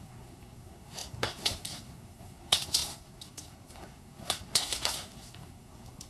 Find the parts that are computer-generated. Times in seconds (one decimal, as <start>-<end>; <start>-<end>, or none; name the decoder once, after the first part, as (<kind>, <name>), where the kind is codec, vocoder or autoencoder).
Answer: 0.0-6.1 (codec, SNAC)